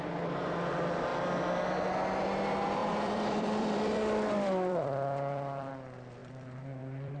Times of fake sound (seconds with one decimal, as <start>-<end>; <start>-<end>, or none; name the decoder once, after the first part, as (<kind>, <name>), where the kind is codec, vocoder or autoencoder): 2.8-5.7 (vocoder, BigVGAN v2); 6.2-7.2